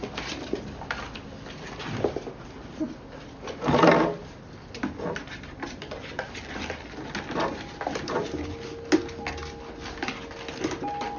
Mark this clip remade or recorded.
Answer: recorded